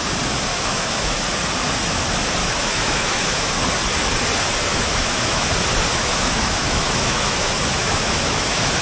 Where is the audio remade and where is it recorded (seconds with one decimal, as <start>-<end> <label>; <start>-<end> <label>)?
0.0-0.5 recorded; 0.5-1.2 remade; 1.2-2.4 recorded; 2.4-3.5 remade; 3.5-4.7 recorded; 4.7-5.5 remade; 5.5-5.9 recorded; 5.9-8.8 remade